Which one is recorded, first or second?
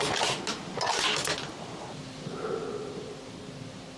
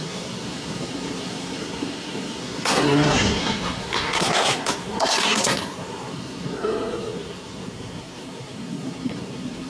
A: first